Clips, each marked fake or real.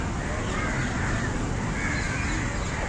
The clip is real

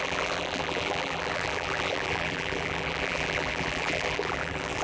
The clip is fake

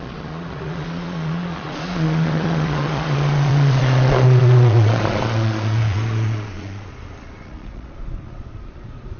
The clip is fake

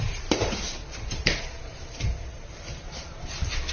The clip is fake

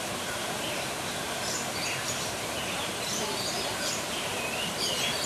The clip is fake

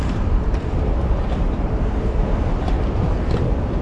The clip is fake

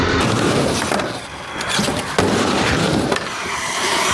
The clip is real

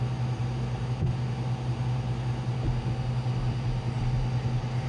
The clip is real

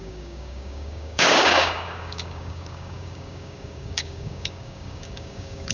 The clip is fake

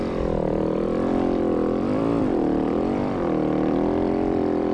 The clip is fake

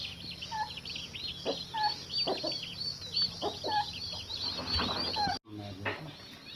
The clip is real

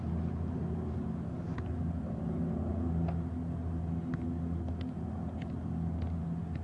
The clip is real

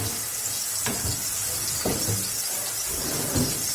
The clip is fake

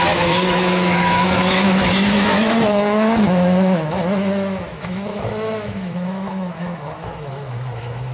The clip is fake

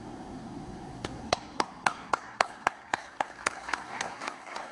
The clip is fake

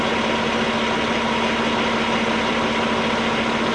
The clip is real